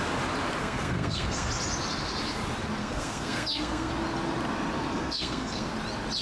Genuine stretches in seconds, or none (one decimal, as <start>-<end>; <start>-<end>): 0.0-0.6; 1.5-2.8; 3.9-4.9; 5.7-6.2